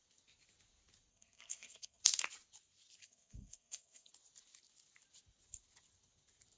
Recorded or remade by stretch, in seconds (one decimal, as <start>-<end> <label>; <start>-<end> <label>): 0.0-1.1 recorded; 1.1-2.0 remade; 2.0-3.0 recorded; 3.0-4.1 remade; 4.1-6.6 recorded